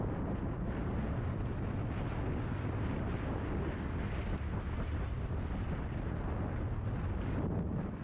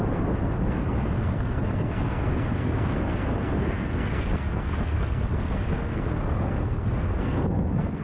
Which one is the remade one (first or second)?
second